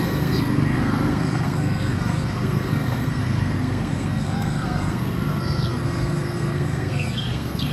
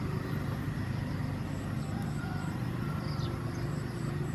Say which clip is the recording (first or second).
second